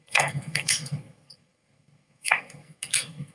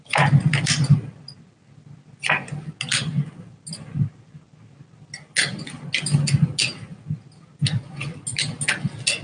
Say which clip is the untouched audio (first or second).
second